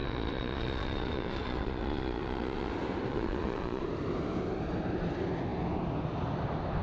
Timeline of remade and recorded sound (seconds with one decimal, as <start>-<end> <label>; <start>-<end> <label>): 0.0-2.7 remade; 2.7-3.1 recorded; 3.1-3.8 remade; 3.8-6.8 recorded